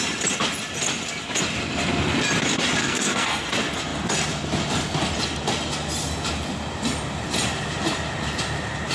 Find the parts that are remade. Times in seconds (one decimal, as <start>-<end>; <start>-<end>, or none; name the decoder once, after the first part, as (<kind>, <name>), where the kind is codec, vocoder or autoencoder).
2.8-3.5 (codec, SNAC)